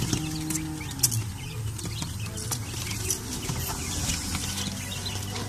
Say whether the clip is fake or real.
fake